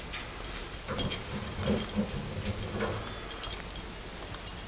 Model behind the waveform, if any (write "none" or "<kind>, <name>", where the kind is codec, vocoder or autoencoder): none